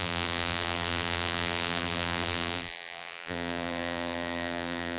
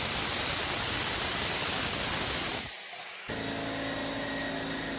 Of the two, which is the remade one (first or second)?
first